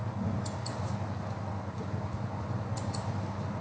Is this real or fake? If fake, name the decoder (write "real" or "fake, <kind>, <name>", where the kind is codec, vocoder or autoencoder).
real